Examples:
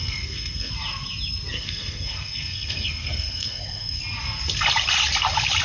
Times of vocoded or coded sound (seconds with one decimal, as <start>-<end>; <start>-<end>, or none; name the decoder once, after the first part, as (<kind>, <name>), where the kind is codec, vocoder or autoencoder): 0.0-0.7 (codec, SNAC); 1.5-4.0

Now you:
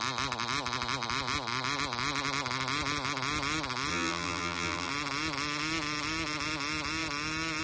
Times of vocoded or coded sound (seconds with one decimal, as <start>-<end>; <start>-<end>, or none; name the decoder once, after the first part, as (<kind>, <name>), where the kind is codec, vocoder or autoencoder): 3.9-4.9 (vocoder, BigVGAN v2)

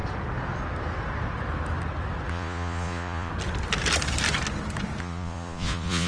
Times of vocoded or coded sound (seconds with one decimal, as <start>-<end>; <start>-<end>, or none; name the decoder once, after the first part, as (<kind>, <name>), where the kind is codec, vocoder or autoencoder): 2.3-3.3 (vocoder, Vocos); 5.0-6.1

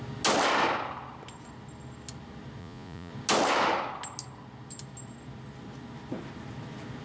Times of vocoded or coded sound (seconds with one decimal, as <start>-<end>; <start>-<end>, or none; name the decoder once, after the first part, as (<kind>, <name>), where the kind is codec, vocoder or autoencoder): 2.6-3.1 (vocoder, Vocos)

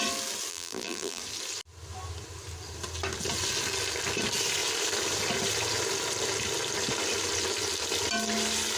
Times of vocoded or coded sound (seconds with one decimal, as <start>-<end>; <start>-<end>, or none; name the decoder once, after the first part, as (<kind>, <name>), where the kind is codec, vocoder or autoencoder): 0.5-1.2 (vocoder, BigVGAN v2)